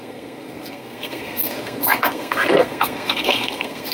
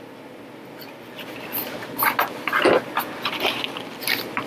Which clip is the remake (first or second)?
first